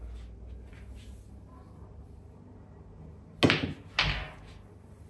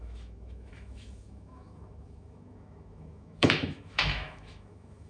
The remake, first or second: second